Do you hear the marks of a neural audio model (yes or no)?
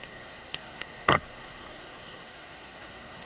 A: yes